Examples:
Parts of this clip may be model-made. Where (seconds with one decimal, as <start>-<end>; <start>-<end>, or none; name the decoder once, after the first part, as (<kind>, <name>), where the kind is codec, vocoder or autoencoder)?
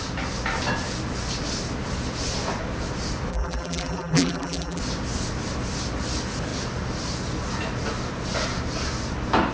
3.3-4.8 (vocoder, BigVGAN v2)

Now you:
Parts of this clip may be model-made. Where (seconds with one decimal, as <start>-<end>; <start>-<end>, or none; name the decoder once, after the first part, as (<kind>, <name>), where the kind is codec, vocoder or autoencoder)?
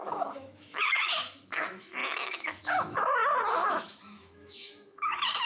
0.0-3.2 (autoencoder, DAC-VAE); 3.7-5.5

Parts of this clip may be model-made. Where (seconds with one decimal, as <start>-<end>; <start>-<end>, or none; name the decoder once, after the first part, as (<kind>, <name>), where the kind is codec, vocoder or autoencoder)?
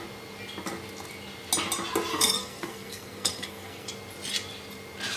2.1-3.9 (codec, SNAC)